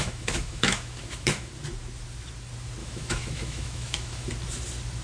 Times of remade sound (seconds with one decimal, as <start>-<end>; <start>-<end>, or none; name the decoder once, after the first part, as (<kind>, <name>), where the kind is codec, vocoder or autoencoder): 0.0-1.5 (autoencoder, DAC-VAE); 2.8-4.3